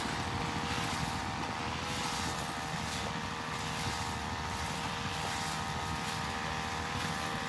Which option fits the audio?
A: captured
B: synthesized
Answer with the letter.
A